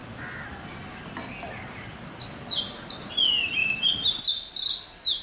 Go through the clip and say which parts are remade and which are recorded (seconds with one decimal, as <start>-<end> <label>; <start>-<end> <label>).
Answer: 0.0-3.6 recorded; 3.6-4.2 remade; 4.2-5.2 recorded